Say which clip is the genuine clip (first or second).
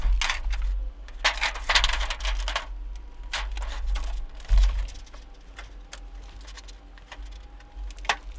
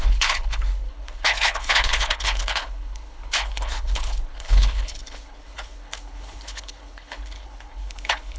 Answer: first